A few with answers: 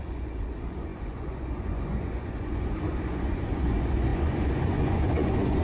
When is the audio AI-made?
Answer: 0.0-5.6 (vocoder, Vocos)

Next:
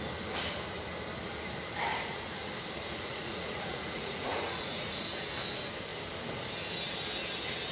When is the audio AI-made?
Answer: 1.9-2.5 (vocoder, Vocos); 2.9-5.0

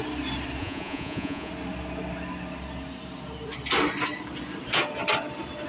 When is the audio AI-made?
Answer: 0.6-1.5 (vocoder, Vocos)

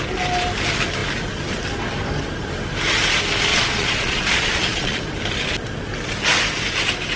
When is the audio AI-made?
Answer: 3.5-5.0 (vocoder, Vocos)

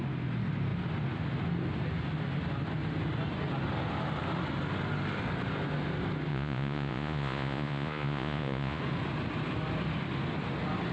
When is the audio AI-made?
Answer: 6.3-8.8 (vocoder, Vocos)

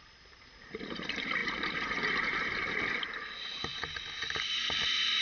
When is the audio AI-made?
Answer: none